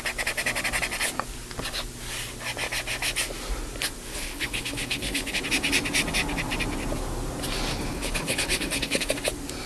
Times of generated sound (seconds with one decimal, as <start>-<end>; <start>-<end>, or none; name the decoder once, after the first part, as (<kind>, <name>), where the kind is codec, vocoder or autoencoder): 4.1-5.4 (codec, HILCodec); 7.7-9.1